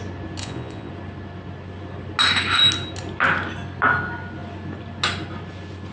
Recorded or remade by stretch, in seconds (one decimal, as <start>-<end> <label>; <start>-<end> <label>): 0.0-0.4 recorded; 0.4-0.9 remade; 0.9-5.9 recorded